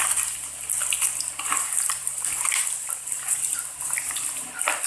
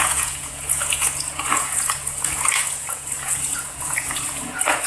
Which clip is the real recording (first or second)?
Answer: first